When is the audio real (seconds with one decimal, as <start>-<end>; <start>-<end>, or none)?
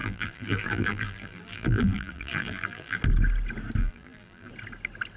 3.0-3.8; 4.5-5.2